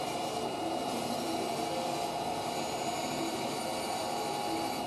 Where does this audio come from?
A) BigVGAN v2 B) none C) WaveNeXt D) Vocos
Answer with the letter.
B